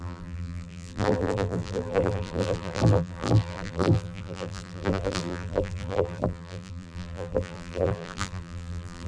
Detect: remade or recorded remade